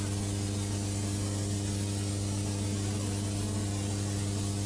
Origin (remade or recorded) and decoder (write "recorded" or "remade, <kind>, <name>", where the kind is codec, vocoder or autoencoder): recorded